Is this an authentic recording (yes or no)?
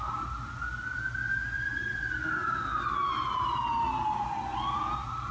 yes